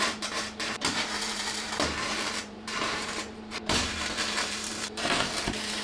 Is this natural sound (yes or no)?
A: no